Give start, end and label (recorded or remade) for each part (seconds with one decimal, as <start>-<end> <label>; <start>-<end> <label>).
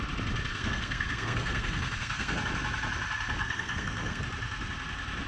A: 0.0-0.5 recorded; 0.5-2.4 remade; 2.4-3.4 recorded; 3.4-4.2 remade; 4.2-5.3 recorded